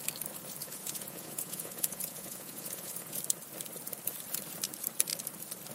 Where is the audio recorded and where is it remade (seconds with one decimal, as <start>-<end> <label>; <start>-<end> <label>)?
0.0-0.6 recorded; 0.6-3.2 remade; 3.2-5.7 recorded

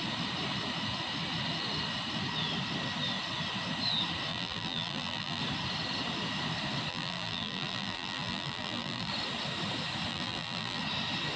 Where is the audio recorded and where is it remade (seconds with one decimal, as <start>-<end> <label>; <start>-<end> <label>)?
0.0-4.3 recorded; 4.3-5.4 remade; 5.4-6.9 recorded; 6.9-9.1 remade; 9.1-10.1 recorded; 10.1-10.8 remade; 10.8-11.4 recorded

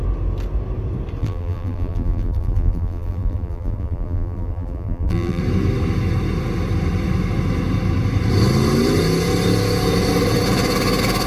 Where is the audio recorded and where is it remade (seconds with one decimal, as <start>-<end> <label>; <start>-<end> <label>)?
0.0-1.2 recorded; 1.2-5.4 remade; 5.4-11.3 recorded

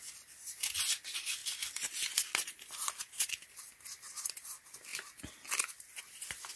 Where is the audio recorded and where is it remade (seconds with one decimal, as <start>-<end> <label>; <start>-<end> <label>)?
0.0-6.6 recorded

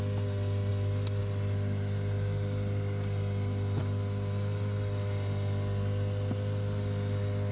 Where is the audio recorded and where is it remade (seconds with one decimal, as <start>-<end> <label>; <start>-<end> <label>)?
0.0-7.5 recorded

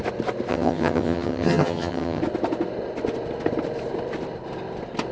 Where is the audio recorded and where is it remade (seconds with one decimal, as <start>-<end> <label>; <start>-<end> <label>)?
0.0-0.5 recorded; 0.5-2.2 remade; 2.2-5.1 recorded

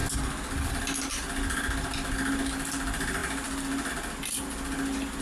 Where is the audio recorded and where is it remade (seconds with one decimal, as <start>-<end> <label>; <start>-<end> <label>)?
0.0-5.2 recorded

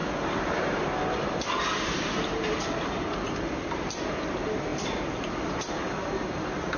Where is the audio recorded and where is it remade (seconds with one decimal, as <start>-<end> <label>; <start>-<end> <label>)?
0.0-6.8 recorded